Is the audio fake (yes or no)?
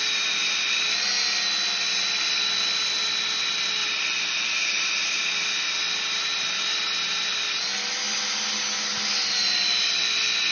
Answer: no